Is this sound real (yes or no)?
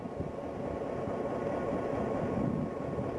no